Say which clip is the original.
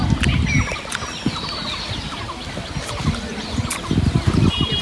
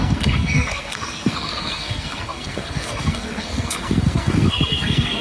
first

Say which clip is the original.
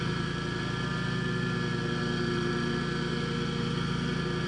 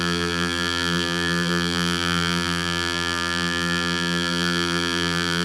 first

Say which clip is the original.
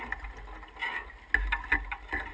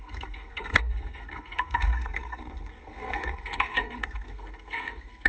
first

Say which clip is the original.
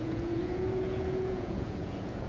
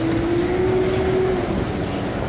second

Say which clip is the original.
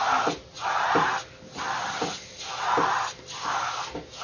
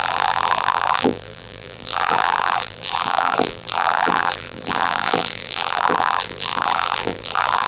first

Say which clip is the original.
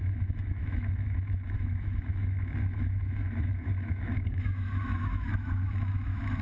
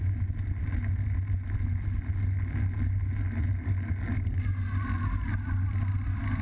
second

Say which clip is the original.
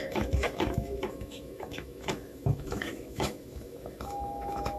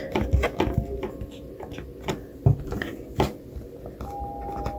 second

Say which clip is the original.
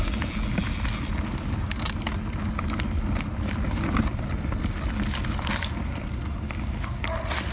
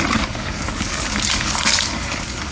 first